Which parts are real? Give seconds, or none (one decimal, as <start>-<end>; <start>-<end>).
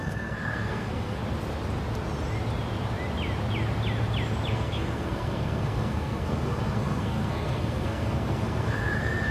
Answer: 1.2-4.5